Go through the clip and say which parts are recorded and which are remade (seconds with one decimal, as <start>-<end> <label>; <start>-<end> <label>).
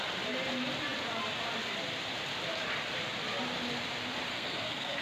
0.0-4.3 recorded; 4.3-5.0 remade